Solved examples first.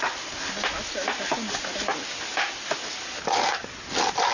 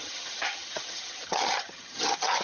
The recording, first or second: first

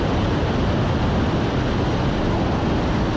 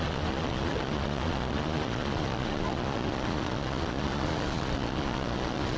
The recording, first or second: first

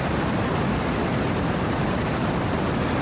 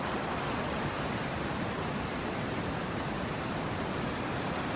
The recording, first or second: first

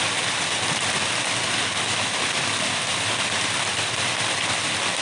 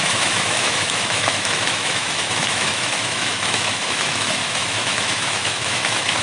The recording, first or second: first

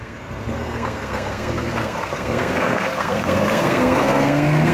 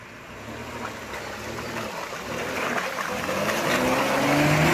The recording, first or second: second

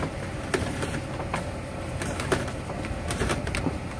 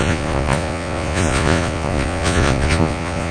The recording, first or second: first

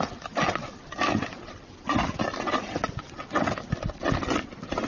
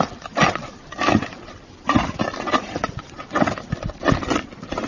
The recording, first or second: first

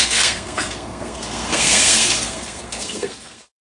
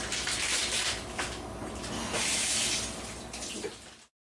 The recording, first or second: second